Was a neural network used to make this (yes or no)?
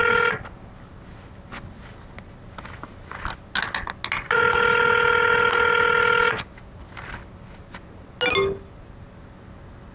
no